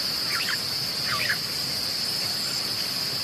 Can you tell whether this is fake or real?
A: real